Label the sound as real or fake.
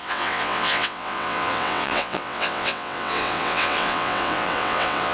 fake